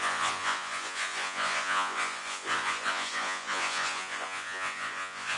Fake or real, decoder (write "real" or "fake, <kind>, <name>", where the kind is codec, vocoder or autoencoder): fake, vocoder, Vocos